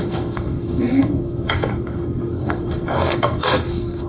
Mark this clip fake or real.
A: fake